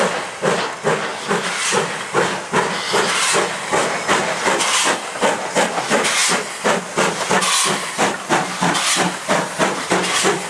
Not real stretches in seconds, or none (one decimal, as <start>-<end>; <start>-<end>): none